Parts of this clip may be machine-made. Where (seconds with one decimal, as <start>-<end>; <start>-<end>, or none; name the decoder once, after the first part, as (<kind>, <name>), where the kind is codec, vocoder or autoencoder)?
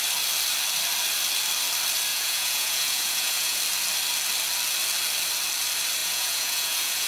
2.1-3.6 (vocoder, Vocos); 6.0-7.1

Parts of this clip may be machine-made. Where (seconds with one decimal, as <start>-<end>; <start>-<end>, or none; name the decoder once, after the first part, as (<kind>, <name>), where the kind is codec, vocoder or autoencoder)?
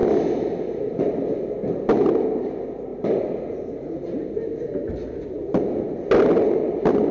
none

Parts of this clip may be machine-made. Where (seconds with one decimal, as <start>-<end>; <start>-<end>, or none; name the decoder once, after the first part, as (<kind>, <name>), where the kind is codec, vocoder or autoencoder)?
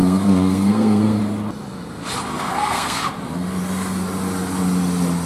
0.0-1.2 (codec, SNAC); 2.3-3.0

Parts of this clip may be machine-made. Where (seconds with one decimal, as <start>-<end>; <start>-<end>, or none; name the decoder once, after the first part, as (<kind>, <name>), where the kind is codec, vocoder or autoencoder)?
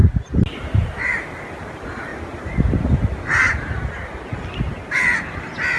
none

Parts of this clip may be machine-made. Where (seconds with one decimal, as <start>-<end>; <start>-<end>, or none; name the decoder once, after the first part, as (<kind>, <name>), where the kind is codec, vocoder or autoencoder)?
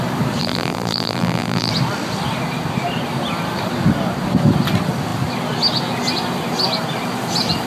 0.4-1.7 (vocoder, BigVGAN v2)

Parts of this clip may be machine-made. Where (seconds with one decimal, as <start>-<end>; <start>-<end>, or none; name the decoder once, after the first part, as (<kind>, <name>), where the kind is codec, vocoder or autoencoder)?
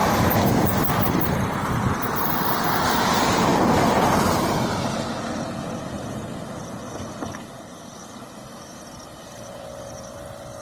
0.0-3.5 (vocoder, BigVGAN v2); 4.3-4.7; 9.2-10.6